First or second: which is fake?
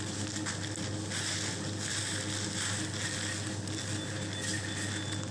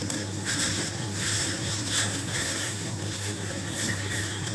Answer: second